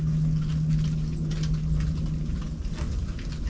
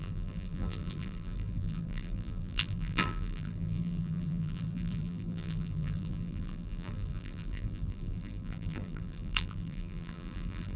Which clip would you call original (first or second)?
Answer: first